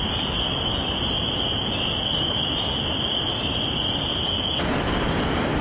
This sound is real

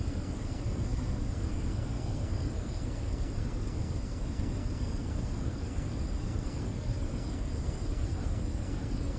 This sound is fake